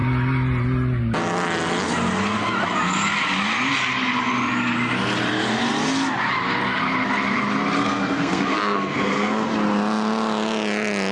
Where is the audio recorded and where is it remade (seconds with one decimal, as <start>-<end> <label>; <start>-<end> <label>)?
0.0-7.8 recorded; 7.8-9.5 remade; 9.5-11.1 recorded